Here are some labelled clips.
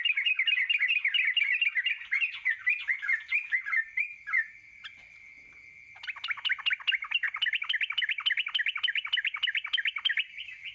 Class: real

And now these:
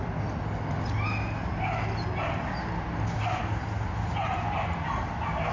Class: real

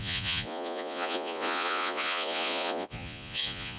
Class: fake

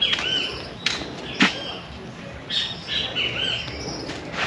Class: real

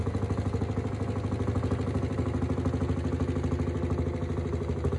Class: real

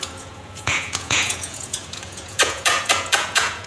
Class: fake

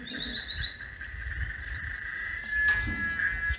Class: real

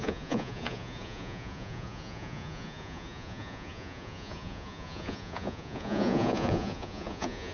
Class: fake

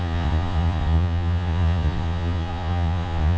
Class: fake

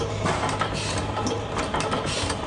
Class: real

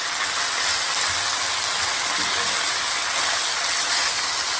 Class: real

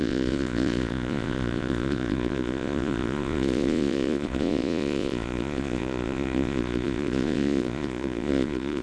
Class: fake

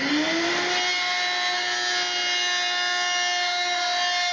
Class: real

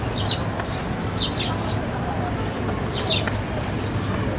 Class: real